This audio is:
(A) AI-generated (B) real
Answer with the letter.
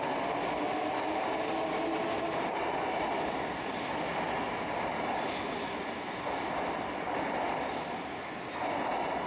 B